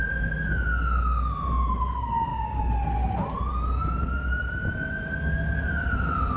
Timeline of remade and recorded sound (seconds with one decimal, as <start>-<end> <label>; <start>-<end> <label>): 0.0-6.4 recorded